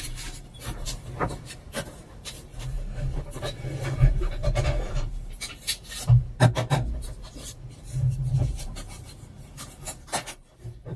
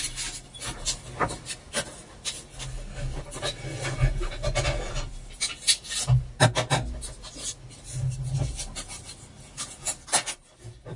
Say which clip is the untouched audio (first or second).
second